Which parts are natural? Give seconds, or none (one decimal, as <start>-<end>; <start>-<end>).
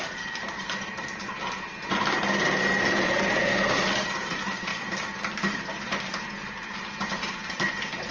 3.8-4.3; 4.7-5.3